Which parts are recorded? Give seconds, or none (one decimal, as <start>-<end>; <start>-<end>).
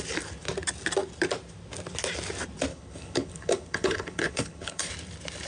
0.0-2.7; 4.9-5.5